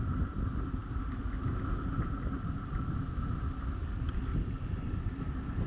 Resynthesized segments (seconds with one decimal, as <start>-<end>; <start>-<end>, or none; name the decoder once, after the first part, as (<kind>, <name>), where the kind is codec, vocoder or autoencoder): none